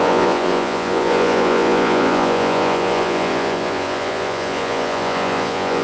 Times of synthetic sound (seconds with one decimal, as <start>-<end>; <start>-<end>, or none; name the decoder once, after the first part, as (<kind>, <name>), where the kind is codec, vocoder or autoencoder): 0.0-5.8 (vocoder, Vocos)